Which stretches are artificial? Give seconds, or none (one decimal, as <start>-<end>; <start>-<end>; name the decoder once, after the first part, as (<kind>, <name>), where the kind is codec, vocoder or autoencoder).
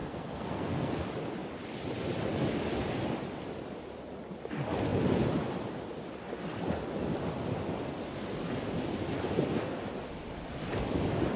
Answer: 0.0-0.9 (codec, SNAC)